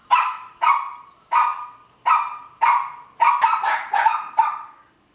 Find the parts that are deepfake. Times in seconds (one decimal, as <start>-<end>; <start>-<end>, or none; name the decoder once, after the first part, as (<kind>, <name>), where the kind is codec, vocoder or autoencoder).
0.0-0.6 (autoencoder, DAC-VAE)